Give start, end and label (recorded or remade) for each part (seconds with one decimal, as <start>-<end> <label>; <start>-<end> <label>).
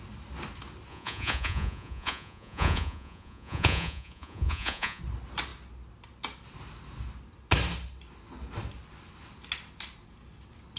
0.0-0.9 recorded; 0.9-5.0 remade; 5.0-10.8 recorded